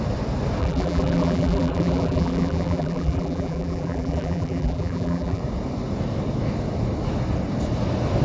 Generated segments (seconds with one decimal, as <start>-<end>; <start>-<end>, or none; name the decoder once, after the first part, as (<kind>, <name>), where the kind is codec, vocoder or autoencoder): 0.6-5.4 (vocoder, BigVGAN v2)